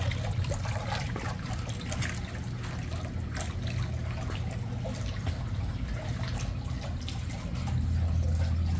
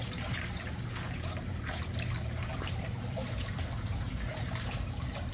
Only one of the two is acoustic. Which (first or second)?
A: first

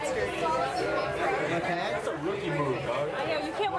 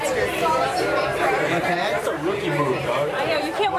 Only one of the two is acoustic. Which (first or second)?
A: first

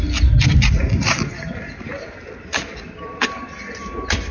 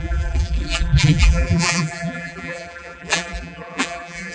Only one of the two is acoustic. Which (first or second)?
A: first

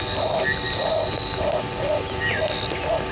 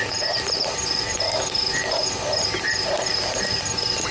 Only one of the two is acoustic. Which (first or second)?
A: first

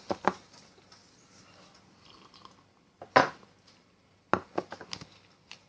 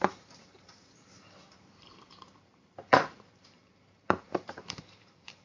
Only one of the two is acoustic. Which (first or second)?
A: first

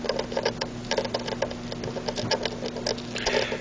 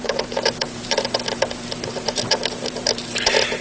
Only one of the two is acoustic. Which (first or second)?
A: first